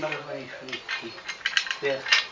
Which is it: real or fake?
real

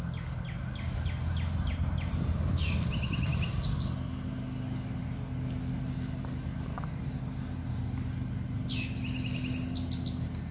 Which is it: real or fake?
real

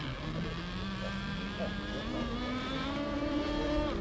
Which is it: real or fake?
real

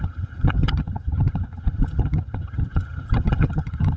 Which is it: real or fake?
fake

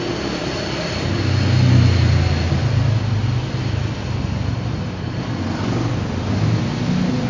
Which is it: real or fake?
real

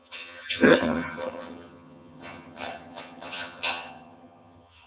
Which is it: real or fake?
fake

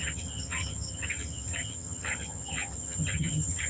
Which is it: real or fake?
fake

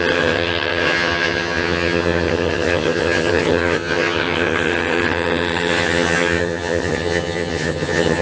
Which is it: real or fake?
fake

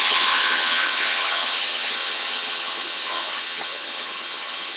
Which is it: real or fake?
fake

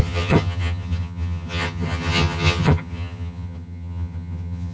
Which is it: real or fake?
fake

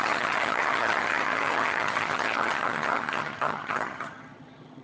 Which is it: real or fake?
fake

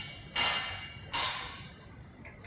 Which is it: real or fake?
real